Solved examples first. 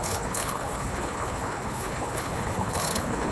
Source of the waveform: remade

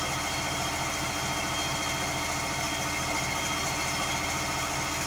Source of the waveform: recorded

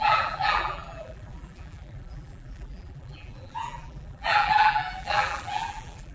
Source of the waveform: remade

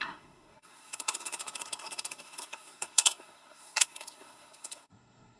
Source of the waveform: remade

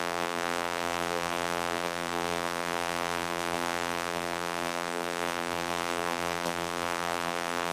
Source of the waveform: remade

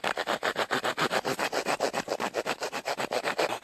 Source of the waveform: recorded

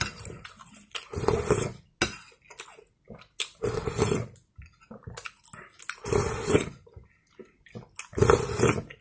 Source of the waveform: recorded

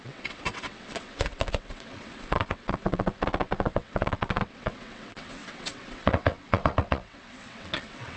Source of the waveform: remade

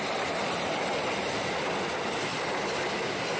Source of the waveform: recorded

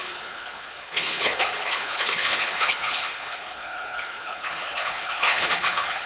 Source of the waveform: remade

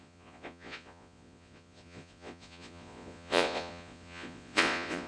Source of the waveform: remade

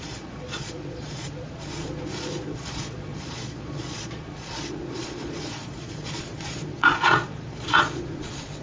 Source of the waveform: remade